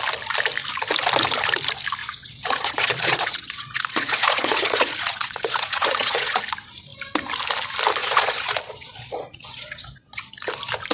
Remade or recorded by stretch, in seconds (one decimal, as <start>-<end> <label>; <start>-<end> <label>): 0.0-2.0 recorded; 2.0-6.4 remade; 6.4-8.0 recorded; 8.0-10.2 remade; 10.2-10.9 recorded